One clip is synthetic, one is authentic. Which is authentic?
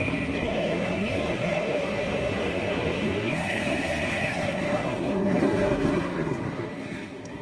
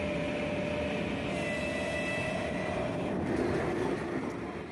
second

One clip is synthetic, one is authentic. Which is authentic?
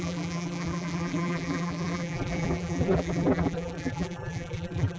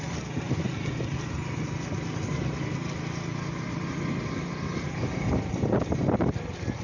second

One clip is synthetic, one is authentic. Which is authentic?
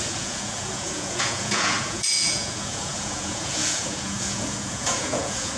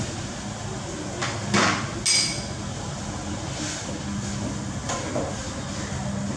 second